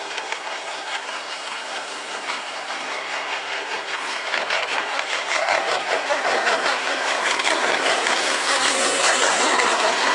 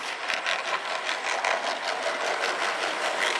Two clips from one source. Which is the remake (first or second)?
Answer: first